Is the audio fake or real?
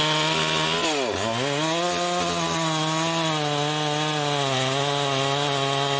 real